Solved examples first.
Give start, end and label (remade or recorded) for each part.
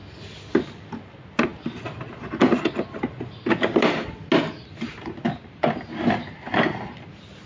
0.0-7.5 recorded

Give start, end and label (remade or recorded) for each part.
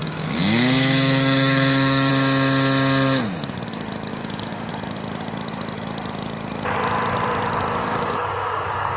0.0-2.1 remade; 2.1-4.1 recorded; 4.1-4.7 remade; 4.7-7.8 recorded; 7.8-9.0 remade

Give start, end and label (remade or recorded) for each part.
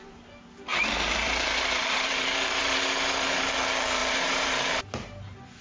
0.0-0.7 recorded; 0.7-3.5 remade; 3.5-4.0 recorded; 4.0-4.8 remade; 4.8-5.6 recorded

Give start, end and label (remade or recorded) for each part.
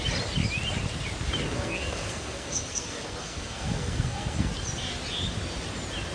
0.0-1.5 recorded; 1.5-4.5 remade; 4.5-6.1 recorded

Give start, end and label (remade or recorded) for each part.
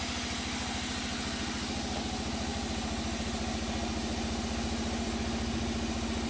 0.0-6.3 recorded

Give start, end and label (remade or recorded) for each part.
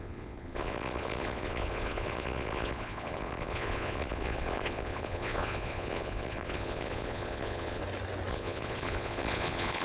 0.0-7.8 remade; 7.8-8.3 recorded; 8.3-9.8 remade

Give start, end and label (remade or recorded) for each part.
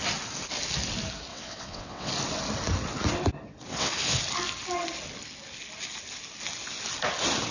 0.0-1.3 recorded; 1.3-2.1 remade; 2.1-3.7 recorded; 3.7-4.2 remade; 4.2-7.5 recorded